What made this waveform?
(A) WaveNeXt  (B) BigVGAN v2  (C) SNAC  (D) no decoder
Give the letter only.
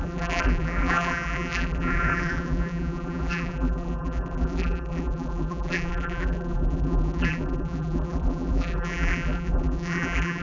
B